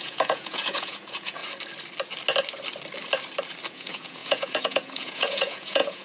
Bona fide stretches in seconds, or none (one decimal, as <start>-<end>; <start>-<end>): 1.4-3.7